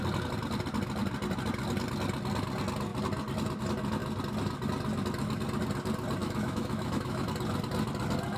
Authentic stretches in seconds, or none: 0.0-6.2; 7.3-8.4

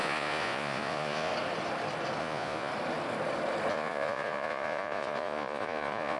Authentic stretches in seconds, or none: 1.3-2.2; 2.7-3.7